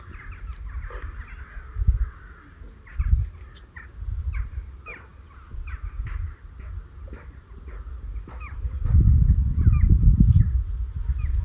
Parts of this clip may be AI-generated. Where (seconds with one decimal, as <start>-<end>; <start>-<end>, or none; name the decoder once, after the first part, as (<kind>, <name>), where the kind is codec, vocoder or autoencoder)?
none